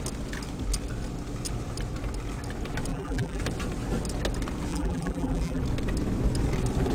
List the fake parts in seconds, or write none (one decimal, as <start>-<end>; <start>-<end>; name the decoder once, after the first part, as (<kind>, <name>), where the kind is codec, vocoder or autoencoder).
2.9-3.4 (vocoder, BigVGAN v2); 4.7-5.6